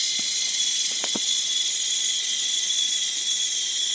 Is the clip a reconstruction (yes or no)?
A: yes